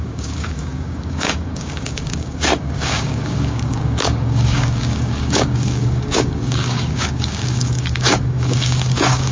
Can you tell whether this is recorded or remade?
remade